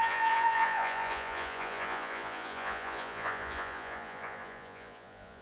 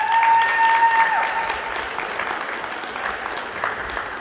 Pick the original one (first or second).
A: second